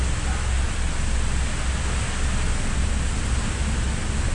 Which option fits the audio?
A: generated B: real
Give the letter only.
B